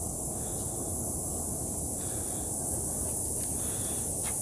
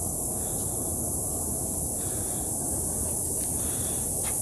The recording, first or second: first